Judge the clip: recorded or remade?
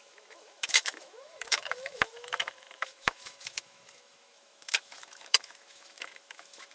remade